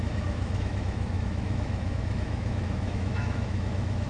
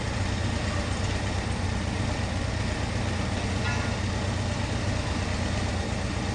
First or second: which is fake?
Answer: first